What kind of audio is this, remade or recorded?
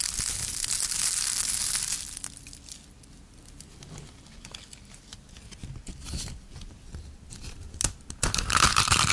recorded